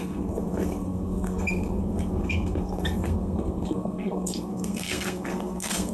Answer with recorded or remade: remade